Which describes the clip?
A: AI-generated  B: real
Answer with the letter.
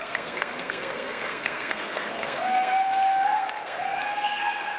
A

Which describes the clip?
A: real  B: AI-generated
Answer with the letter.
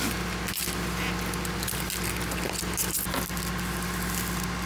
A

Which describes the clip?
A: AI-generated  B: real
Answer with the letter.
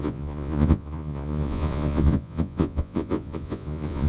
A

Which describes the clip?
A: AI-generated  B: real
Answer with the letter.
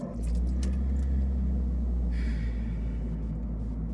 B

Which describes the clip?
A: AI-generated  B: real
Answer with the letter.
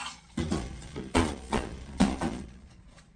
A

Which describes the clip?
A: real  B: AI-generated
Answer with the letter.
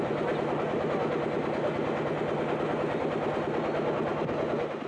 A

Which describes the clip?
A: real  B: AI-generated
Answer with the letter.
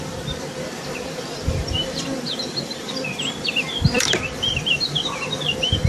B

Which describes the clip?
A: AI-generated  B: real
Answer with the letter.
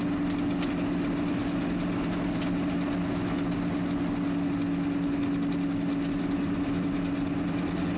B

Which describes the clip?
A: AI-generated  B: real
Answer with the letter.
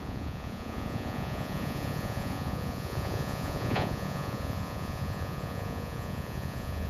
A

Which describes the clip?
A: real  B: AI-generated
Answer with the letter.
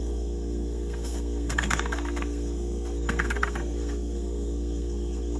B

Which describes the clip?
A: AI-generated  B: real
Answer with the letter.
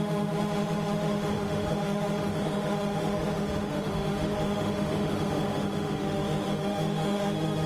A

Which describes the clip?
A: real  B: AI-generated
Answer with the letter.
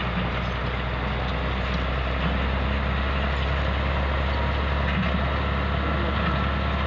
A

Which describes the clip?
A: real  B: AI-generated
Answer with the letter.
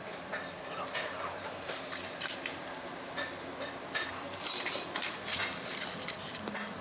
B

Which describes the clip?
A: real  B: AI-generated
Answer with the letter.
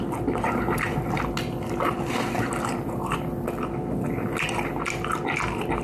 A